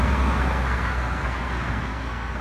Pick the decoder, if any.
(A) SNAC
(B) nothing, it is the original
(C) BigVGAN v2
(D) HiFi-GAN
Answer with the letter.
A